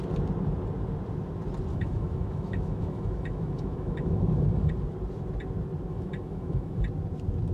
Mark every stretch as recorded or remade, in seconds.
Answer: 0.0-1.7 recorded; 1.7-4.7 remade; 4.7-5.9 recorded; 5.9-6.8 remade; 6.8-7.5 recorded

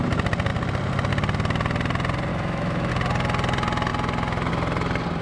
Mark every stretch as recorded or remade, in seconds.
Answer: 0.0-2.3 recorded; 2.3-2.9 remade; 2.9-5.2 recorded

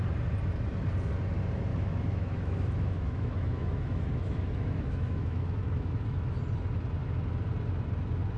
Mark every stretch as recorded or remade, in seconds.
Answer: 0.0-1.7 recorded; 1.7-6.4 remade; 6.4-8.4 recorded

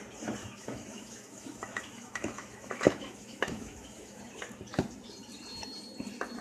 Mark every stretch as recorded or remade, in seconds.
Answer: 0.0-0.4 recorded; 0.4-4.2 remade; 4.2-6.4 recorded

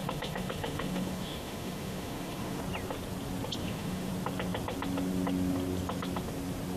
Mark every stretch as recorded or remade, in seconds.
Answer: 0.0-2.6 remade; 2.6-3.6 recorded; 3.6-4.1 remade; 4.1-6.8 recorded

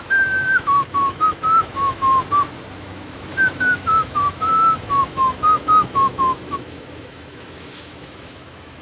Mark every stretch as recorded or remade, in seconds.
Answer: 0.0-2.1 remade; 2.1-2.8 recorded; 2.8-8.8 remade

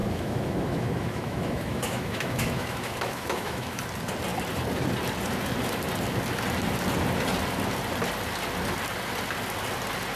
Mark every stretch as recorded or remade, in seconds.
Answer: 0.0-3.8 remade; 3.8-10.2 recorded

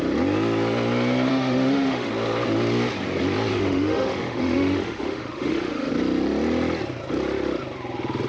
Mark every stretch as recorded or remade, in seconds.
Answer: 0.0-1.3 recorded; 1.3-2.1 remade; 2.1-3.5 recorded; 3.5-5.9 remade; 5.9-8.3 recorded